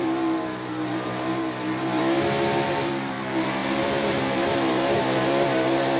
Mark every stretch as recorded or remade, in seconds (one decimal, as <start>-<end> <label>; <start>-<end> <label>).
0.0-2.0 remade; 2.0-2.7 recorded; 2.7-6.0 remade